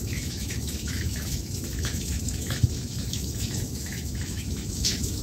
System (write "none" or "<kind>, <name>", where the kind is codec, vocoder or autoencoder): autoencoder, DAC-VAE